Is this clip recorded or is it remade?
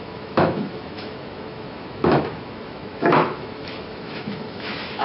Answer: remade